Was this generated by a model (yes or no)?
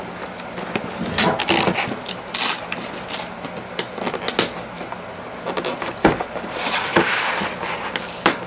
no